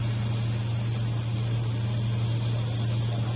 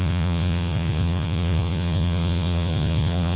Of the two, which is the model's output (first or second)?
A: second